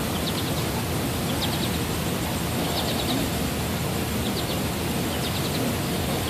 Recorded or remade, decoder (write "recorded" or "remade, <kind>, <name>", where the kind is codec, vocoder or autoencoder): recorded